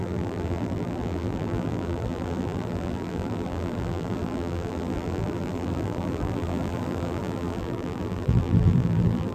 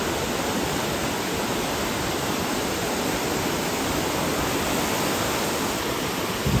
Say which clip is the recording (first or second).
second